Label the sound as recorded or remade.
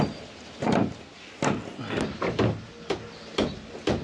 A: recorded